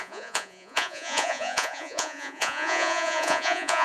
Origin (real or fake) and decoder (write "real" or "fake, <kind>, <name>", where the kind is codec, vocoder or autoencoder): fake, vocoder, Vocos